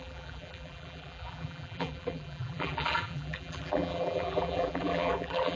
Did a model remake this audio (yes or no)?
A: yes